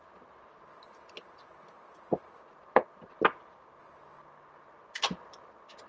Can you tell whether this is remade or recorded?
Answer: recorded